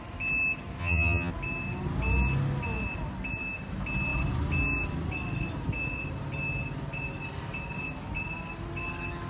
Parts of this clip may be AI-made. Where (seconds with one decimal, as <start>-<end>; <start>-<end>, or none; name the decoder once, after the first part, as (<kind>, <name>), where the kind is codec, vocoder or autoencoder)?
0.8-1.3 (vocoder, HiFi-GAN)